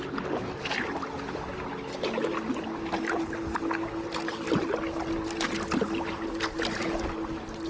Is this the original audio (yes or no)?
yes